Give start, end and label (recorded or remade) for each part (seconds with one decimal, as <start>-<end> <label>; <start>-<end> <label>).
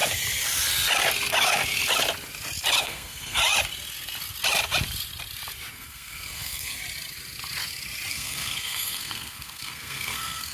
0.0-2.8 recorded; 2.8-3.4 remade; 3.4-5.7 recorded; 5.7-6.8 remade; 6.8-8.1 recorded; 8.1-10.5 remade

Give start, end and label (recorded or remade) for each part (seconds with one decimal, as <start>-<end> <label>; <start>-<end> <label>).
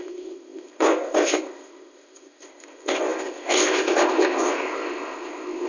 0.0-5.7 remade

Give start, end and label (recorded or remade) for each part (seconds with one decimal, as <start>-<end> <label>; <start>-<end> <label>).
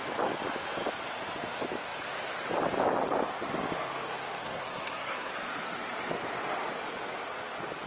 0.0-4.4 recorded; 4.4-5.3 remade; 5.3-7.9 recorded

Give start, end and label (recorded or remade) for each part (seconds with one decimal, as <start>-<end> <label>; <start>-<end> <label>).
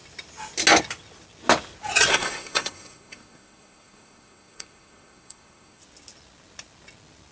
0.0-2.1 recorded; 2.1-5.8 remade; 5.8-7.3 recorded